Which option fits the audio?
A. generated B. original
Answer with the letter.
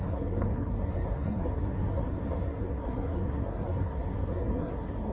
A